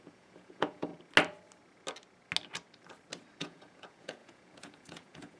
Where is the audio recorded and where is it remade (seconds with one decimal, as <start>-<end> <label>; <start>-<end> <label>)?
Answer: 0.0-0.9 remade; 0.9-3.4 recorded; 3.4-5.4 remade